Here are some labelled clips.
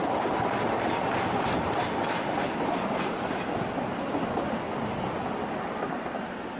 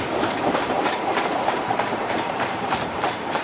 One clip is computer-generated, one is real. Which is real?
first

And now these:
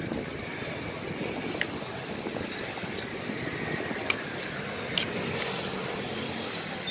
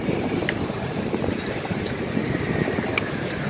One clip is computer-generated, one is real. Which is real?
first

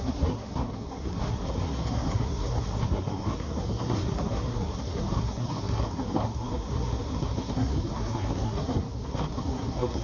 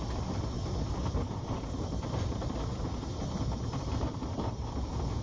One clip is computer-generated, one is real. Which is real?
second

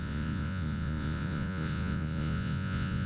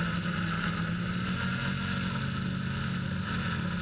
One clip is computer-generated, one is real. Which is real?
second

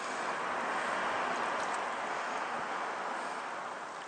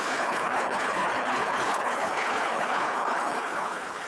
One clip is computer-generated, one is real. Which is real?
first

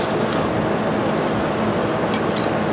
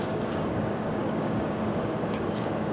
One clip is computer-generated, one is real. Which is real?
first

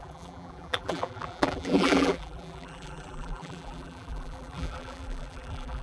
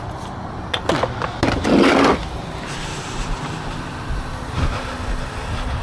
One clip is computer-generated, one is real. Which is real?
second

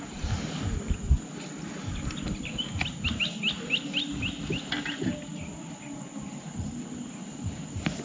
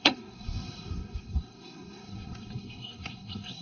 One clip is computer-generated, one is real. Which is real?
first